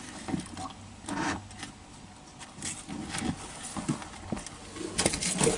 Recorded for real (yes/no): yes